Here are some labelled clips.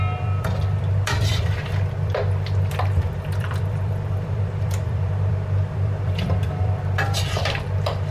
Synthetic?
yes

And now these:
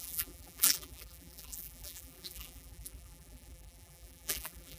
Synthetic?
yes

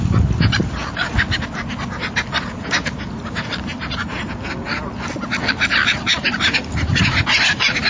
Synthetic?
no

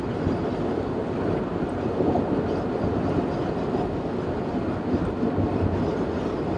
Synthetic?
no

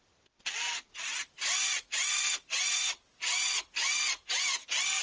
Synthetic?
no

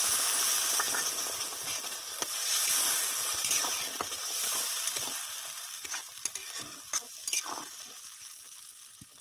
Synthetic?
no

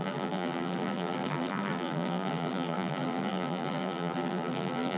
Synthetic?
yes